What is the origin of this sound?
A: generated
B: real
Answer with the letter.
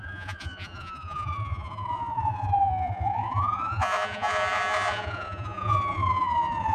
A